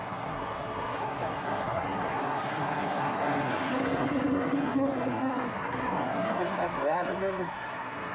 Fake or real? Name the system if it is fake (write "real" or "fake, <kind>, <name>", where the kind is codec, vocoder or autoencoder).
fake, codec, SNAC